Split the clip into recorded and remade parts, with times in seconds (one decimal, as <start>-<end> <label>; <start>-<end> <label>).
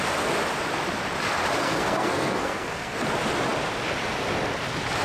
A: 0.0-1.6 recorded; 1.6-3.0 remade; 3.0-5.0 recorded